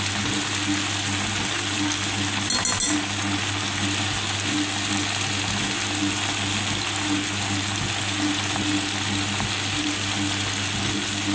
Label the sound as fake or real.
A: real